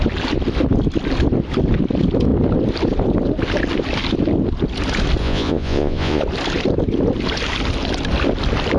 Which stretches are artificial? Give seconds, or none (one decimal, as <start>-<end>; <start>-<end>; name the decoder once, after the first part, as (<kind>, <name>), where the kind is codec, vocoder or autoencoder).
5.2-6.2 (vocoder, Vocos)